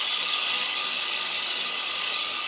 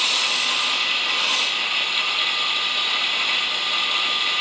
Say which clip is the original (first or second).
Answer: second